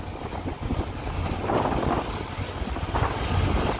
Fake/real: real